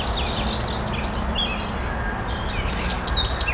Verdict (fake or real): real